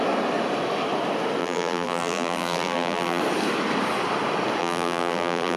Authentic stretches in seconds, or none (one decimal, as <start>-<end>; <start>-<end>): 0.0-1.4; 3.2-4.6

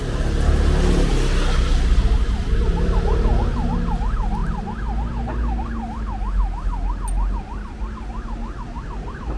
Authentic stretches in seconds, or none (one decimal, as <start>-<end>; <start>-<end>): 0.0-9.4

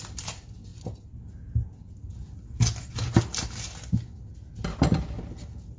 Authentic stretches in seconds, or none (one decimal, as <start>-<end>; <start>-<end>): 0.0-5.8

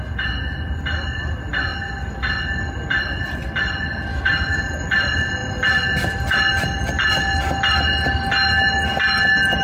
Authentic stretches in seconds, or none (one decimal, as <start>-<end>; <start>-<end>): 0.0-4.1; 4.6-9.6

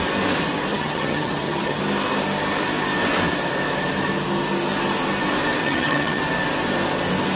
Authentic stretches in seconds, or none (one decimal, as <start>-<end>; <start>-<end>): 0.0-0.7; 1.8-5.6; 6.2-7.4

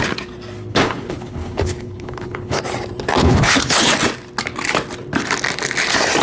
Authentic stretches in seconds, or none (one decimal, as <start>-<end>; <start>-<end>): 0.0-0.7; 2.6-3.2; 3.9-6.2

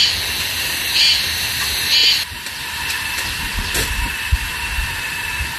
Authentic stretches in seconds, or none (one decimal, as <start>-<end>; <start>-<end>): 0.0-5.6